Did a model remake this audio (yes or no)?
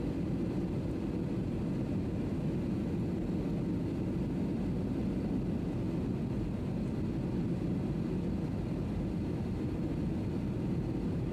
no